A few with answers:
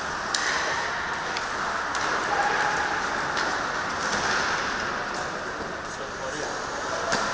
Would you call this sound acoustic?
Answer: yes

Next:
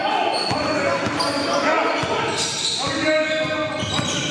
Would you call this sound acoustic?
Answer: yes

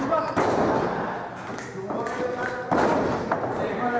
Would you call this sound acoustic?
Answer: yes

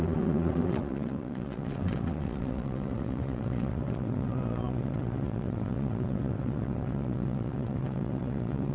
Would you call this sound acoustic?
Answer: no